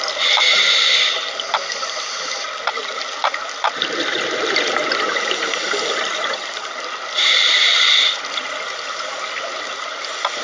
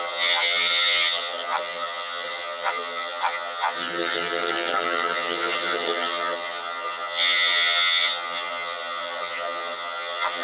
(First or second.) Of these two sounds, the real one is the first